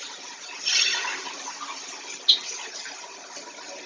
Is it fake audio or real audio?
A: fake